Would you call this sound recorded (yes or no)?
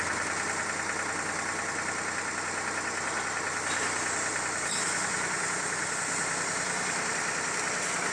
yes